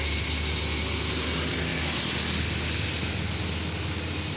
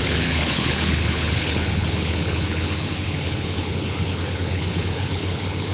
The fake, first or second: second